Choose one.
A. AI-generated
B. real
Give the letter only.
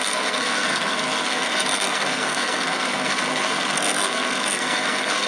A